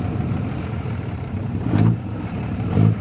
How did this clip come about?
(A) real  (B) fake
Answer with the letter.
B